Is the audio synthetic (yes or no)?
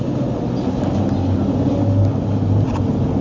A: no